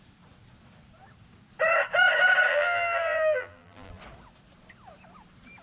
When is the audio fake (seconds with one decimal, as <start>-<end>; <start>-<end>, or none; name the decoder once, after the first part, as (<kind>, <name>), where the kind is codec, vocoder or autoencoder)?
2.5-4.0 (vocoder, BigVGAN v2)